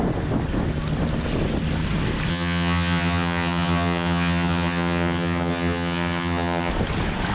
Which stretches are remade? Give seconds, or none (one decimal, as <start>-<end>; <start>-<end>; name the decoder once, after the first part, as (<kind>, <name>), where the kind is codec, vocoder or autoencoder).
2.3-6.7 (vocoder, HiFi-GAN)

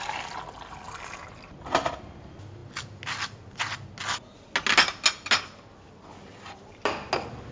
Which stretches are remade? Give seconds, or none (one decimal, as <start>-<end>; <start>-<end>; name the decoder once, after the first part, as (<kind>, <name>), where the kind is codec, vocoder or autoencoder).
none

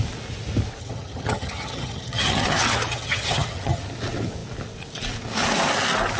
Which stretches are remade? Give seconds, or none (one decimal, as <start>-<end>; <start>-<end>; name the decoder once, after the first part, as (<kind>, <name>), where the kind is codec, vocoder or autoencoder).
0.8-3.8 (vocoder, HiFi-GAN)

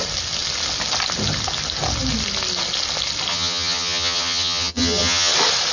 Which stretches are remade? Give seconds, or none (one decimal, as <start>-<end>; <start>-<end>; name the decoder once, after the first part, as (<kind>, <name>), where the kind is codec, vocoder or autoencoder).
3.3-5.3 (vocoder, HiFi-GAN)